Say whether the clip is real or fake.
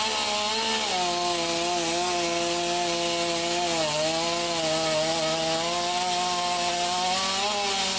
real